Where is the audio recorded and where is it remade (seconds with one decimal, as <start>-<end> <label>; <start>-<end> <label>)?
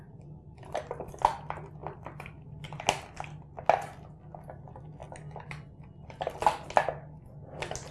0.0-7.9 recorded